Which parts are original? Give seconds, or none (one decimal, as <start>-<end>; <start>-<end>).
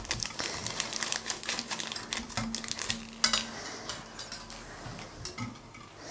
0.0-6.1